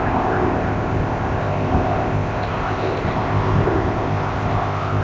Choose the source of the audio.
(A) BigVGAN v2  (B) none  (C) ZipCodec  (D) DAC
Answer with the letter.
C